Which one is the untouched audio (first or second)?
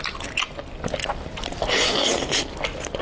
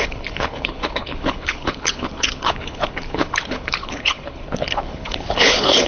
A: first